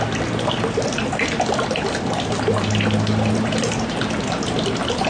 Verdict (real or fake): real